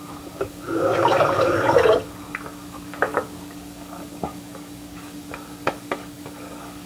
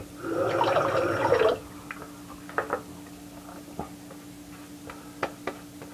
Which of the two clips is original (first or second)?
second